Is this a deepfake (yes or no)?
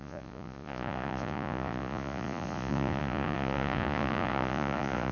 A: yes